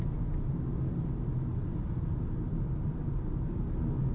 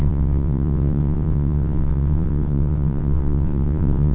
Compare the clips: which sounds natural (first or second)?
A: first